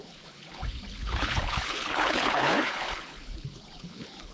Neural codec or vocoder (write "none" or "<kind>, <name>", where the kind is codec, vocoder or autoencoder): codec, HILCodec